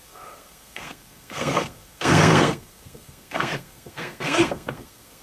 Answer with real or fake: fake